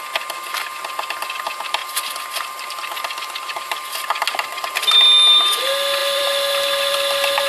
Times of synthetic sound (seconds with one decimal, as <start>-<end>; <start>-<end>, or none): 1.8-3.9; 6.0-7.5